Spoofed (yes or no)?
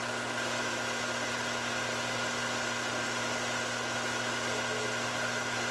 no